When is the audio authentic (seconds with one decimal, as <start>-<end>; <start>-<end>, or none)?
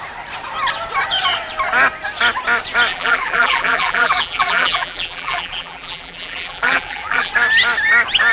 0.0-2.9; 7.3-8.3